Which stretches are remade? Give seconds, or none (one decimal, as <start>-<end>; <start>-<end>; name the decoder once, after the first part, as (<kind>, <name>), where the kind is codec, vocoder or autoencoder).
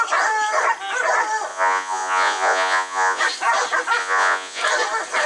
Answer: 1.5-3.2 (vocoder, Vocos); 4.0-4.6